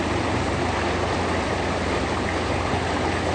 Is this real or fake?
real